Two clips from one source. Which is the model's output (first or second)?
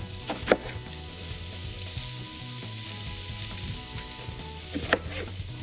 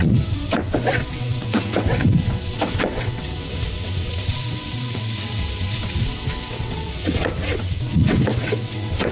second